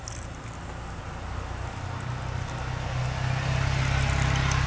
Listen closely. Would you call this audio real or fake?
real